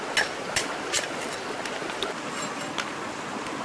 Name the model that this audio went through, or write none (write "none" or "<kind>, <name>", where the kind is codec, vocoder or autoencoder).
none